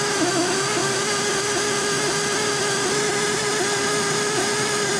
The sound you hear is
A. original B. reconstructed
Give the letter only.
A